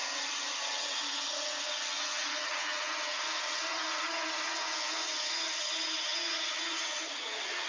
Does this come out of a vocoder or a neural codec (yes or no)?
yes